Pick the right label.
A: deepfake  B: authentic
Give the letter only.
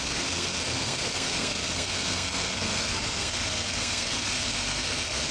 A